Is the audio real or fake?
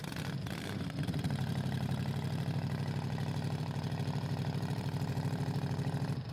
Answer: fake